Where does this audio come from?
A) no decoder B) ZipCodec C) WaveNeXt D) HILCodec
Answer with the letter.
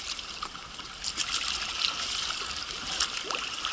A